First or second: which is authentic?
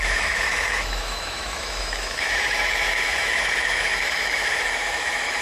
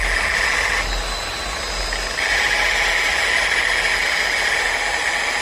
second